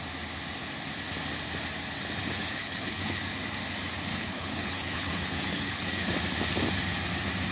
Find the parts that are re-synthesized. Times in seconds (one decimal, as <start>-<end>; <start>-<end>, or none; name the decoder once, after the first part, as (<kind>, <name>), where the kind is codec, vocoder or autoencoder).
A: 2.6-3.2 (codec, HILCodec); 4.1-6.1